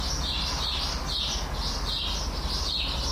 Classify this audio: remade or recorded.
recorded